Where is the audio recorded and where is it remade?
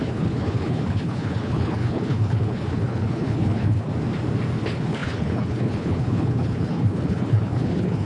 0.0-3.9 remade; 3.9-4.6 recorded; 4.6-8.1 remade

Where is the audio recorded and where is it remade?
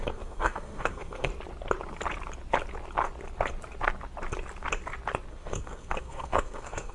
0.0-1.3 remade; 1.3-5.3 recorded; 5.3-6.9 remade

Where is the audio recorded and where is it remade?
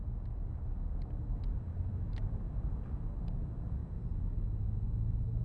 0.0-5.4 recorded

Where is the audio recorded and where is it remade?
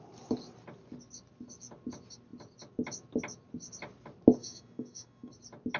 0.0-4.4 recorded; 4.4-5.3 remade; 5.3-5.8 recorded